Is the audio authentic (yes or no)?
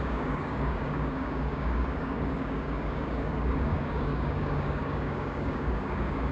no